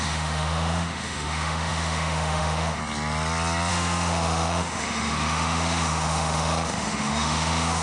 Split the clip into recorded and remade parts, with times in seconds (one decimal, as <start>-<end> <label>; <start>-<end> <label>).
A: 0.0-2.8 remade; 2.8-3.7 recorded; 3.7-7.8 remade